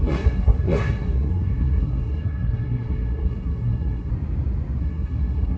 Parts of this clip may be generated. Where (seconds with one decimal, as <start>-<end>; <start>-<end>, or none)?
0.0-4.1; 4.8-5.6